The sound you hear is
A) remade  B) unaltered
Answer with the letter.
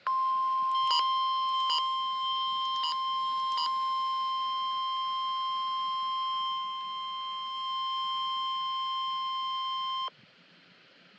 B